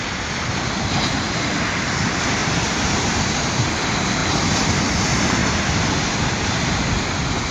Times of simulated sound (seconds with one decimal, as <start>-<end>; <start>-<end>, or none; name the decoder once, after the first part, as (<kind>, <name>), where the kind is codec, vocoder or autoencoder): 0.0-5.4 (vocoder, BigVGAN v2)